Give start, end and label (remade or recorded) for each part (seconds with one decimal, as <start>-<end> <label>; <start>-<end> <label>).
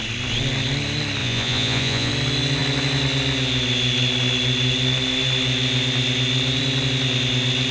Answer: 0.0-1.2 recorded; 1.2-2.1 remade; 2.1-7.7 recorded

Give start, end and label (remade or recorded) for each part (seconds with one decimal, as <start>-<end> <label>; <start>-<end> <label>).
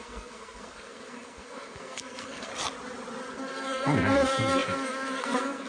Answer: 0.0-2.5 remade; 2.5-3.3 recorded; 3.3-5.7 remade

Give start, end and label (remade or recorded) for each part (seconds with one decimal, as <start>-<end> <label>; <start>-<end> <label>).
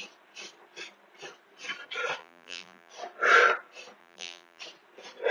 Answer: 0.0-2.2 recorded; 2.2-2.9 remade; 2.9-4.0 recorded; 4.0-4.6 remade; 4.6-5.3 recorded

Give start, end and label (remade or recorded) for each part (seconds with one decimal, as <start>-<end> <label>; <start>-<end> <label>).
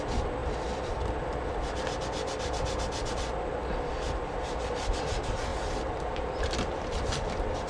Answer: 0.0-5.5 recorded; 5.5-7.7 remade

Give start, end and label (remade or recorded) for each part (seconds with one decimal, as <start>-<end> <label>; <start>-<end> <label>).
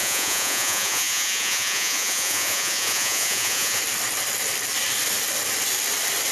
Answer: 0.0-3.8 remade; 3.8-6.3 recorded